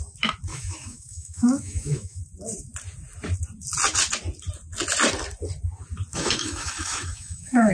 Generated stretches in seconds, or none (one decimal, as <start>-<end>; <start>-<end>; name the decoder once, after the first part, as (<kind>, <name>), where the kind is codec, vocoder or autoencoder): 0.5-2.2 (autoencoder, DAC-VAE); 6.1-7.7